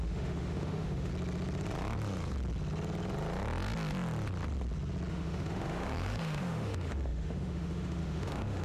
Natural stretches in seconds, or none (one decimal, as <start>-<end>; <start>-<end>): 1.1-5.1